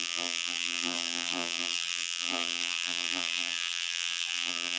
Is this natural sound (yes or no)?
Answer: no